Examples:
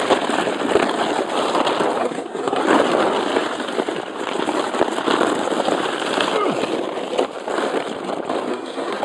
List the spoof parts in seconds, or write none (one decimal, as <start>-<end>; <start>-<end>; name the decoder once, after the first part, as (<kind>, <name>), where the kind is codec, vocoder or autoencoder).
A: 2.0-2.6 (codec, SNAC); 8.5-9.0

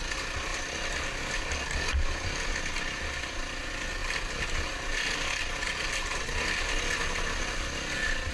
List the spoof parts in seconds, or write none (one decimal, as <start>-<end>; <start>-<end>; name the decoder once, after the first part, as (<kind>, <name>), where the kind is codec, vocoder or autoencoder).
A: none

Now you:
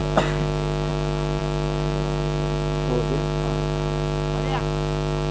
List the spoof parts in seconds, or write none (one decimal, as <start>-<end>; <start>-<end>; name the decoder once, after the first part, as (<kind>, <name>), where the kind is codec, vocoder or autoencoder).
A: none